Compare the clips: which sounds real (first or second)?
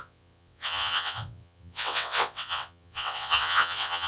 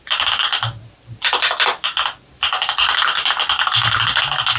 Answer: second